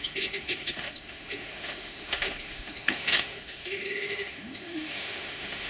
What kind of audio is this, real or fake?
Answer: fake